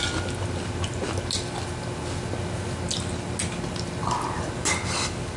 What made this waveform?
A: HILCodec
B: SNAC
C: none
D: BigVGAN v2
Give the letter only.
C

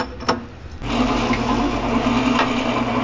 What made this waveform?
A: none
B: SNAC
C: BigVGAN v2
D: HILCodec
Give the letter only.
A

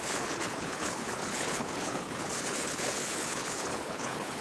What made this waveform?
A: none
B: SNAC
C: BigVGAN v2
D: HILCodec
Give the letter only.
D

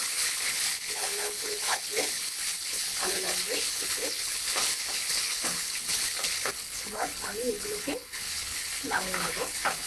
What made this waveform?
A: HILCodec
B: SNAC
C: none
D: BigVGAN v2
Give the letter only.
A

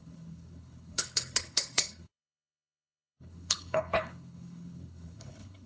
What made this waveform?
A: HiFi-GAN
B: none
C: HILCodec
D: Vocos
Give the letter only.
C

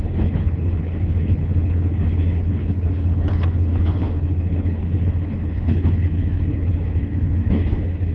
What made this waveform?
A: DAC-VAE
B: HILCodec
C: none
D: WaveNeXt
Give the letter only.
B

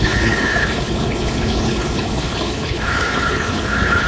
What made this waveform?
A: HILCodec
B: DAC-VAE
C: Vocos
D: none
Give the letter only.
A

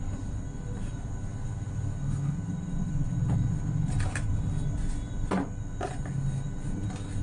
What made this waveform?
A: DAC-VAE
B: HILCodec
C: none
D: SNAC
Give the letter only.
C